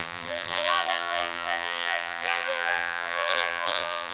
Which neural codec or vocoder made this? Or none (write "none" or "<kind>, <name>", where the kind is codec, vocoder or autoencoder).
vocoder, BigVGAN v2